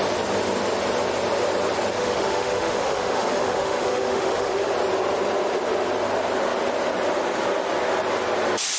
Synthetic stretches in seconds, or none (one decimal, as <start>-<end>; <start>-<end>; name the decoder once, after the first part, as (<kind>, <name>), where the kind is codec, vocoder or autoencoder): 2.0-4.7 (autoencoder, DAC-VAE)